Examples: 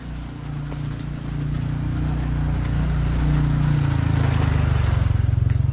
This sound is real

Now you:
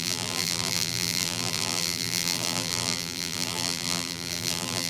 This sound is fake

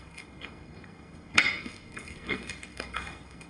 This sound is fake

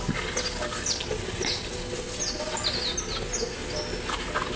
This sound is real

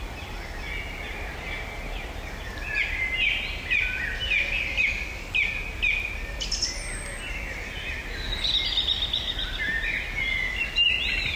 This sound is real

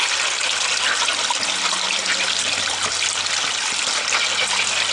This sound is real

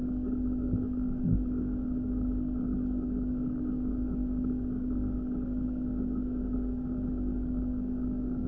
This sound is fake